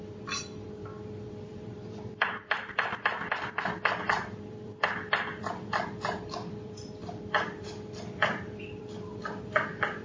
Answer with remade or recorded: remade